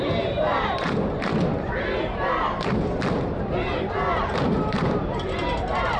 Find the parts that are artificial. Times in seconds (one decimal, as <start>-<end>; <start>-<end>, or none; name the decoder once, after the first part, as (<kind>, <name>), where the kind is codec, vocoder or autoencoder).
0.0-1.3 (vocoder, BigVGAN v2); 4.4-6.0